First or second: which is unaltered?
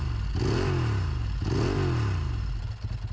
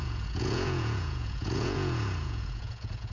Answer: first